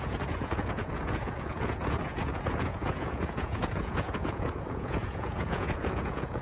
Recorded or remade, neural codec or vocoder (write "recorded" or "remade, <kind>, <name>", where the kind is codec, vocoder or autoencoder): remade, vocoder, Vocos